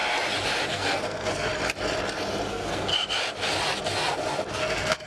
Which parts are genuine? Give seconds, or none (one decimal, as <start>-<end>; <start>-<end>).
0.0-0.7; 1.5-2.5; 2.9-4.5